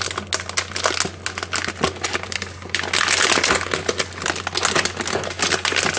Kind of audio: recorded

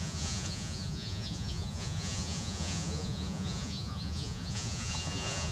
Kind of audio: remade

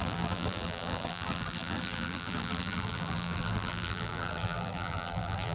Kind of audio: remade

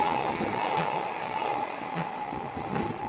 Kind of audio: remade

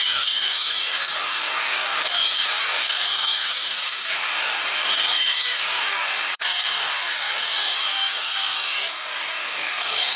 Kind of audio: remade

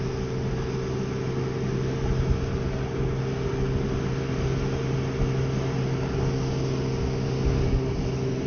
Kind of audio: recorded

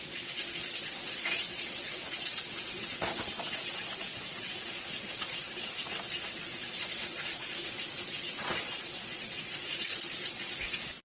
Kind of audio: remade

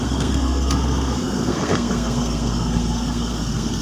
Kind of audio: remade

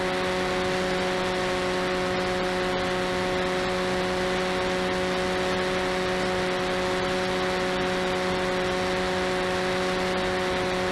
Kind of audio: recorded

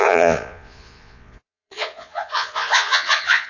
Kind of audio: remade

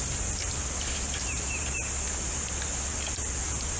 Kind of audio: recorded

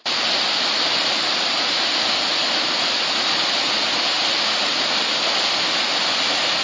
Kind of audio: recorded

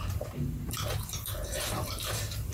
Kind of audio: remade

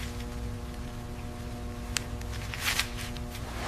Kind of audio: recorded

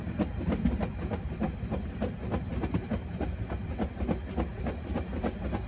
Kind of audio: recorded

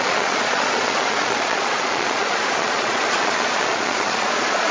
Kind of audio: remade